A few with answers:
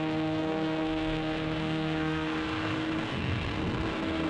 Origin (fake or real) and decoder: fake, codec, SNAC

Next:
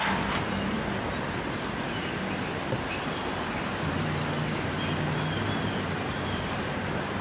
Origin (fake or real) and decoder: real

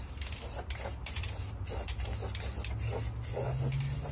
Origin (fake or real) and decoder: real